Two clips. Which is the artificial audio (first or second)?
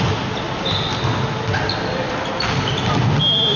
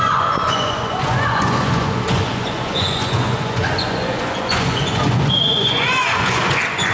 second